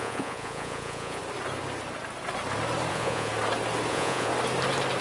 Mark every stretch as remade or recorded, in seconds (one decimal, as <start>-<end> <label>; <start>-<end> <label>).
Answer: 0.0-1.2 remade; 1.2-2.9 recorded; 2.9-3.3 remade; 3.3-3.9 recorded; 3.9-4.3 remade; 4.3-5.0 recorded